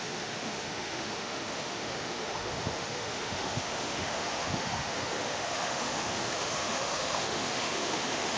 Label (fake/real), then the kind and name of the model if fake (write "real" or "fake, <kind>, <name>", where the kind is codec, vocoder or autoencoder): fake, autoencoder, DAC-VAE